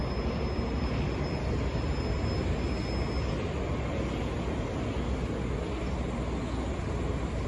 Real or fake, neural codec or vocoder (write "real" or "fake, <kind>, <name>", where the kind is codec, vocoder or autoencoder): real